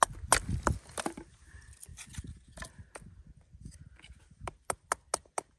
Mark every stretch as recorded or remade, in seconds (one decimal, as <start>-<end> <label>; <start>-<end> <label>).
0.0-5.6 recorded